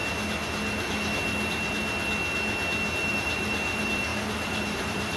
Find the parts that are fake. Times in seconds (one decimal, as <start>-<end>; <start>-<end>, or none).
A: 3.1-5.2